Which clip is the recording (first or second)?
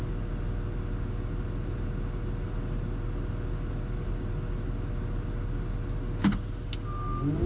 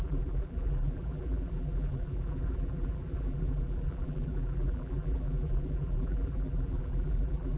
first